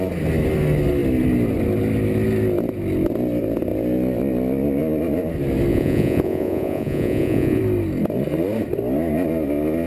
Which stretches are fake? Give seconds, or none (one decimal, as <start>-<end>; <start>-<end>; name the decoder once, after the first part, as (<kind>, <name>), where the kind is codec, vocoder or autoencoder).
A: 5.7-7.6 (vocoder, Vocos)